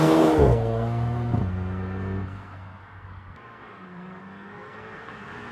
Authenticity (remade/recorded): remade